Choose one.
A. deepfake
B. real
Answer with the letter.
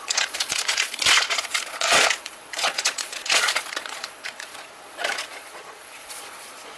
A